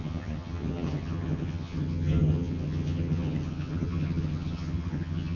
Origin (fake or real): fake